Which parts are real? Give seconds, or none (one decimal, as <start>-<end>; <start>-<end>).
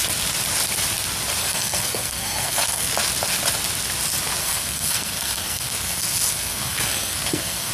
0.0-1.4; 2.9-4.4